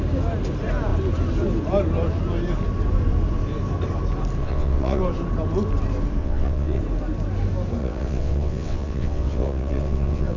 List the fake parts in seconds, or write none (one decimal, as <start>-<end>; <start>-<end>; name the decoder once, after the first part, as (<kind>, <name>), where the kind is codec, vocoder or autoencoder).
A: 4.4-5.0 (vocoder, WaveNeXt); 6.2-6.8; 7.8-10.4